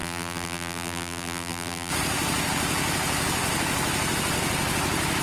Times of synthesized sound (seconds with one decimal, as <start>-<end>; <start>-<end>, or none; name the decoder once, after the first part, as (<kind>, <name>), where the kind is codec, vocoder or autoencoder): 0.0-1.9 (vocoder, BigVGAN v2)